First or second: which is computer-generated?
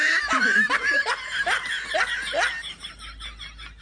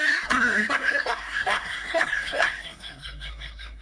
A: second